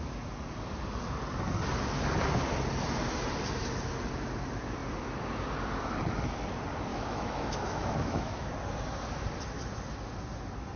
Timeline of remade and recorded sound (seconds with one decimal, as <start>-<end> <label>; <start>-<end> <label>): 0.0-6.9 recorded; 6.9-8.5 remade; 8.5-10.8 recorded